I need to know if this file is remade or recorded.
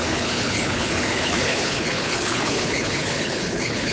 remade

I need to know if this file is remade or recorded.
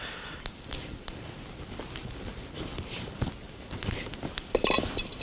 remade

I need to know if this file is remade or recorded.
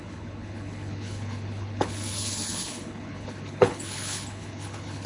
remade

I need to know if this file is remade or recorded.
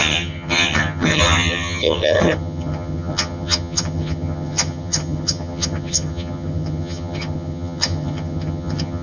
remade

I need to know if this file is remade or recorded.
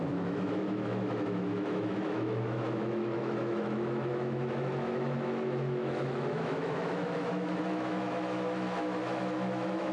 remade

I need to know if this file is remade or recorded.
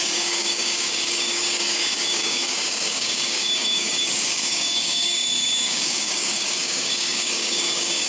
remade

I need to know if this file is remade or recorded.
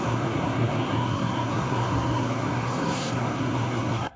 remade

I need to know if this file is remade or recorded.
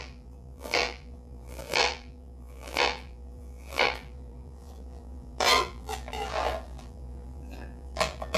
remade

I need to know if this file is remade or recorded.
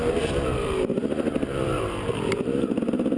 remade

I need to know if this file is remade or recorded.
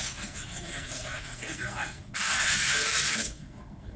remade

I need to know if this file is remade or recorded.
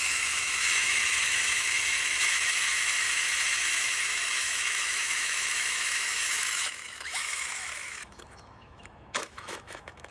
remade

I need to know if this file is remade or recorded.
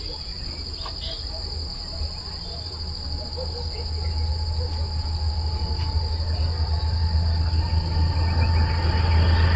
recorded